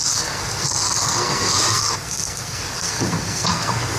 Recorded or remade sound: remade